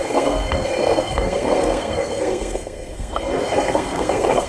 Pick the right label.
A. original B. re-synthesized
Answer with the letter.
B